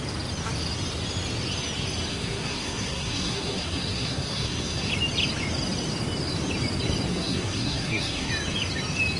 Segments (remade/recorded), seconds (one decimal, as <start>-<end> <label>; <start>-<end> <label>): 0.0-2.1 recorded; 2.1-4.9 remade; 4.9-7.1 recorded; 7.1-8.3 remade; 8.3-9.2 recorded

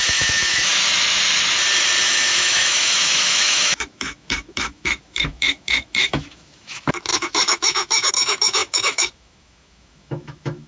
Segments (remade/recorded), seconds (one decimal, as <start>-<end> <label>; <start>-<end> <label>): 0.0-0.7 remade; 0.7-2.0 recorded; 2.0-10.7 remade

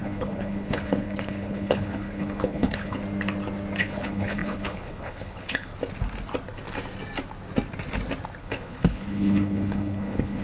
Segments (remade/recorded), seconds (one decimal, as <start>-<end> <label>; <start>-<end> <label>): 0.0-3.0 remade; 3.0-3.8 recorded; 3.8-5.7 remade; 5.7-8.4 recorded; 8.4-10.4 remade

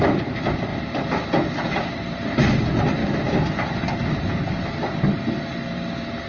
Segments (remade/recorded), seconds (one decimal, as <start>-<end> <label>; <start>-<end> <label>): 0.0-0.7 remade; 0.7-2.4 recorded; 2.4-3.0 remade; 3.0-6.3 recorded

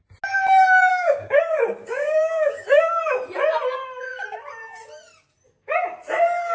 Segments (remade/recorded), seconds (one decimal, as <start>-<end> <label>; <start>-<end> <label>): 0.0-0.9 recorded; 0.9-1.4 remade; 1.4-1.8 recorded; 1.8-3.0 remade; 3.0-6.5 recorded

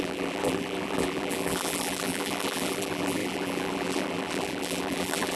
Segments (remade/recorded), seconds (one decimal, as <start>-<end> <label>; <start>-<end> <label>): 0.0-5.4 remade

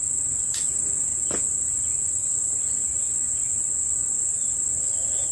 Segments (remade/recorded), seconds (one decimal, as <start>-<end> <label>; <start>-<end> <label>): 0.0-5.3 recorded